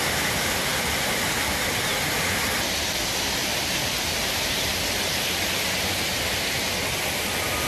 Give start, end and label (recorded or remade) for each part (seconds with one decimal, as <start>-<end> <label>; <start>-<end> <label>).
0.0-7.7 recorded